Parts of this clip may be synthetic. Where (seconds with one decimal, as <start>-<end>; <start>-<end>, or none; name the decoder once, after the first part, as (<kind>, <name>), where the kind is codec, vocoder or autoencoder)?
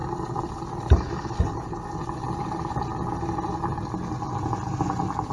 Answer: none